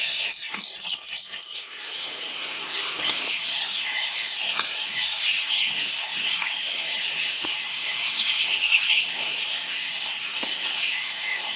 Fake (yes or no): yes